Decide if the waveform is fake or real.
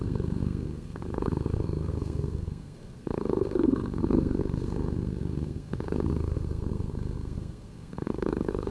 fake